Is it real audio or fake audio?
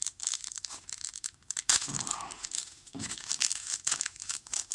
fake